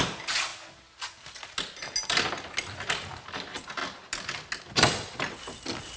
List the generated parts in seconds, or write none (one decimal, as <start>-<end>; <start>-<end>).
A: none